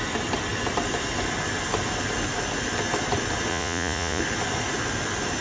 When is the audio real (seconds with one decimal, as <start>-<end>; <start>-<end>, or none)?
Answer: 0.0-3.5; 4.2-5.4